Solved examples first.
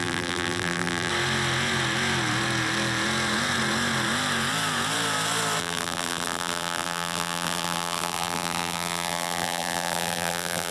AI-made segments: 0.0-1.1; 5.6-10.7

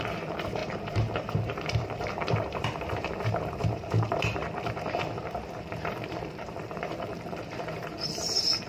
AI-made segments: 0.0-8.7

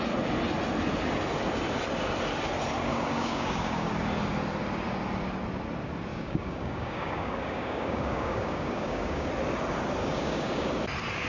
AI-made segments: 2.9-3.9; 6.1-9.3; 10.0-10.7

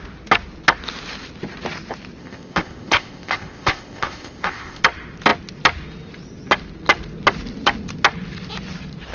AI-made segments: 2.2-4.8

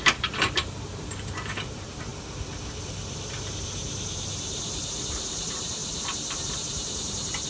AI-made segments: 0.0-2.1; 4.3-7.5

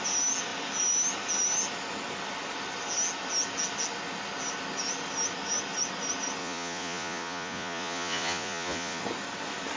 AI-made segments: 6.4-9.0

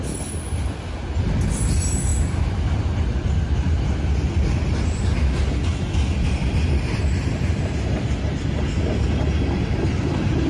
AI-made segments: none